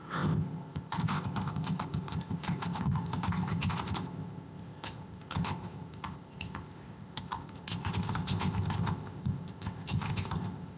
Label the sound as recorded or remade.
remade